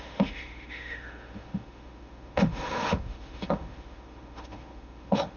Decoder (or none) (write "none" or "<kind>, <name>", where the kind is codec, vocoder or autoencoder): autoencoder, DAC-VAE